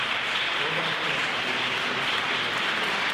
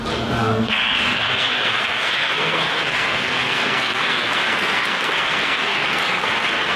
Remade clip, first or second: second